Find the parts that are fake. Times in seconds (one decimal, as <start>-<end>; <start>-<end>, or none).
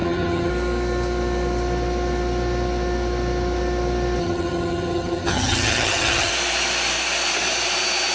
0.0-0.5; 4.2-6.3